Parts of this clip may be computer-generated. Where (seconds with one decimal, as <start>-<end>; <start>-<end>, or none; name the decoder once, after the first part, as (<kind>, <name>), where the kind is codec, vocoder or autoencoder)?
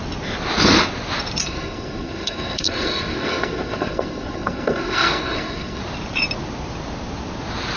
1.4-5.8 (codec, SNAC)